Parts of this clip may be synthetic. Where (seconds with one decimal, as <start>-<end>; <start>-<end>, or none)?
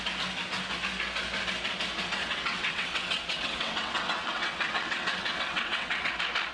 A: 2.2-6.1